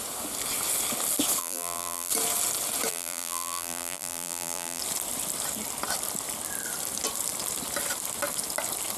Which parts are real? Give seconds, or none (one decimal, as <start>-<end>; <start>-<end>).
0.0-1.4; 2.1-2.9; 4.8-9.0